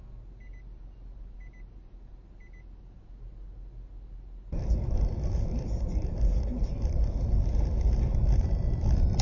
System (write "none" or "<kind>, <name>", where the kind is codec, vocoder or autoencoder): none